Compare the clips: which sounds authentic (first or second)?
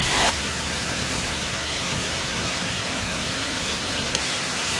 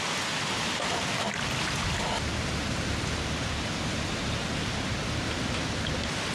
second